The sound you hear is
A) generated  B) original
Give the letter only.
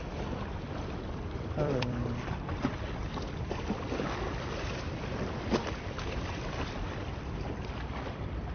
A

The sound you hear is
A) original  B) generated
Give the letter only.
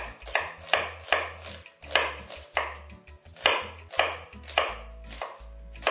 A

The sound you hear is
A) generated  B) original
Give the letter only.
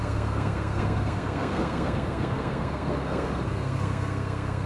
A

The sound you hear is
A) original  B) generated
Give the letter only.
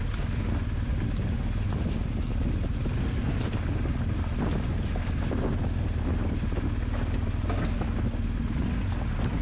A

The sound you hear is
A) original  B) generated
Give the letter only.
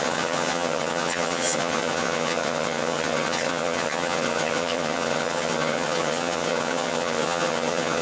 B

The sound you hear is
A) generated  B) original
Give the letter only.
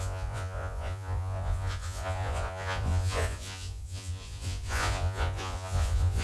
A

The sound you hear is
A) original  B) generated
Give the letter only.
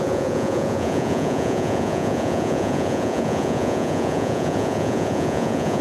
B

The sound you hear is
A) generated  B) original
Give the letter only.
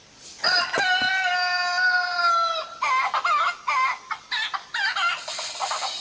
B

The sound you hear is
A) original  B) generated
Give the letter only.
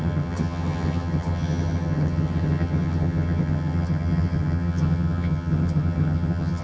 B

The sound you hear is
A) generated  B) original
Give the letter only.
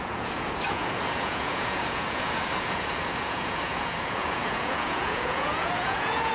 A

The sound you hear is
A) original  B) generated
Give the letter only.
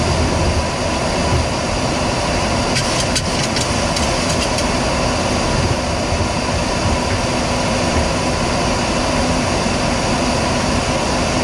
A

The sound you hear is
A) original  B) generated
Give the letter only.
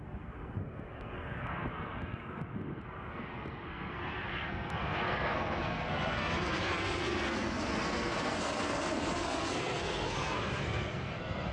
B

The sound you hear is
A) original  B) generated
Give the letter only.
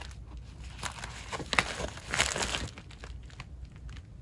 A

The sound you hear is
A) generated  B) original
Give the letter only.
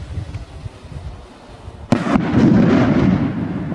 B